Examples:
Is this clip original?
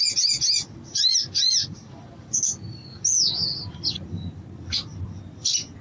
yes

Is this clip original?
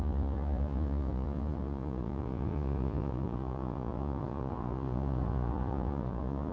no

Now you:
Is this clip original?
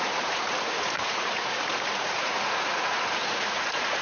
no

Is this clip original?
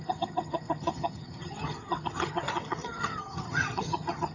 no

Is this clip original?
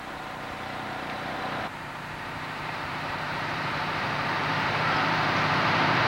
no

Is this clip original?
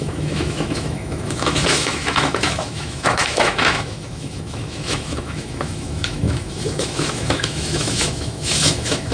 no